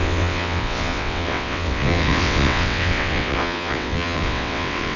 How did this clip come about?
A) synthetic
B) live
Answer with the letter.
A